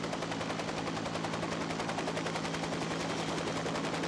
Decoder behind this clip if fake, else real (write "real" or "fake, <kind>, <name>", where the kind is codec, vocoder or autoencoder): real